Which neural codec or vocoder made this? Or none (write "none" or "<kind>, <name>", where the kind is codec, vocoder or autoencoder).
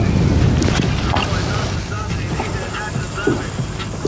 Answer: none